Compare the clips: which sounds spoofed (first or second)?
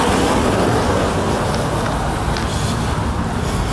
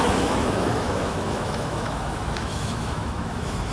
second